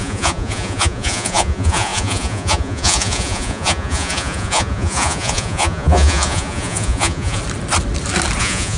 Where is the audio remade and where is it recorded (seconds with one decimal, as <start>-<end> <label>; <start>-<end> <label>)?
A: 0.0-7.4 remade; 7.4-8.4 recorded; 8.4-8.8 remade